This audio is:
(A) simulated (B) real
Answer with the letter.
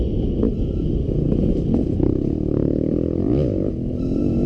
B